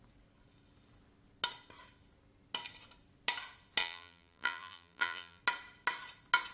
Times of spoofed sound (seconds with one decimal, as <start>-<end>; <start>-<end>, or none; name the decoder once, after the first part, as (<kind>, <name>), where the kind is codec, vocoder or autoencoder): 3.8-5.4 (vocoder, BigVGAN v2)